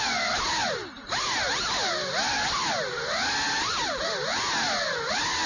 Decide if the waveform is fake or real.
real